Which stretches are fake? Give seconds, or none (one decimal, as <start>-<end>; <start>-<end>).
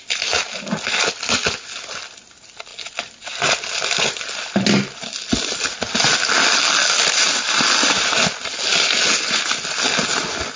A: none